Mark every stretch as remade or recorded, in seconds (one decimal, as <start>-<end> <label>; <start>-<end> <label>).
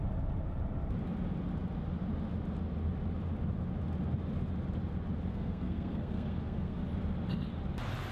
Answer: 0.0-5.3 recorded; 5.3-6.8 remade; 6.8-8.1 recorded